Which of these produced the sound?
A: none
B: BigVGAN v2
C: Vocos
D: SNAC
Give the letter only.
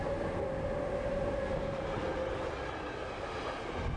A